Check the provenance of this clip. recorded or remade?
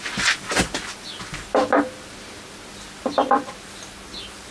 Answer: recorded